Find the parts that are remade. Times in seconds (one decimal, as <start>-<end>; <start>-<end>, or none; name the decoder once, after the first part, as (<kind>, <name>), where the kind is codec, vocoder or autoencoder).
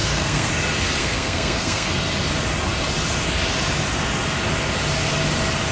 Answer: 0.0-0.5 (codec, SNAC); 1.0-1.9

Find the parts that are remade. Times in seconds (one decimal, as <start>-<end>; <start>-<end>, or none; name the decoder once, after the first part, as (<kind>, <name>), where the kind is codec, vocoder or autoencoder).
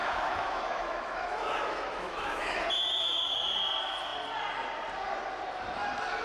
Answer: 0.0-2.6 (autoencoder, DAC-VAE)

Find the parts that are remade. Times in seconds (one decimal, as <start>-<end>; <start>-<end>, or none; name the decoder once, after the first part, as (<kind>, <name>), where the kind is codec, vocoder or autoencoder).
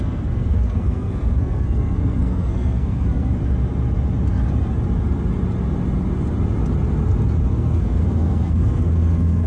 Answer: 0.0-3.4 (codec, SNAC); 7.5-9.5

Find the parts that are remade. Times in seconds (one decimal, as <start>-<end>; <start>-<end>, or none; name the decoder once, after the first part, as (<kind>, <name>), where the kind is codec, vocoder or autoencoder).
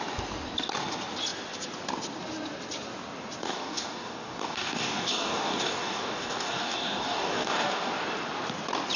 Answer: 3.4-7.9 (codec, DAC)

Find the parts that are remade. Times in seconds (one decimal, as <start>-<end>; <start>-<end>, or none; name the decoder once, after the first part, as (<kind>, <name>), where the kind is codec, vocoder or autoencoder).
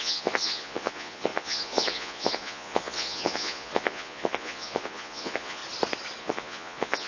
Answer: 0.0-5.6 (vocoder, Vocos); 6.2-7.1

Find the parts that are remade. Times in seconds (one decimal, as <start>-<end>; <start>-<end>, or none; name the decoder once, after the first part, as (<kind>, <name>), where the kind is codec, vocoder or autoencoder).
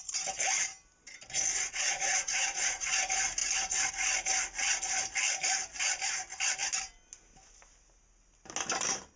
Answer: 1.5-2.9 (vocoder, Vocos)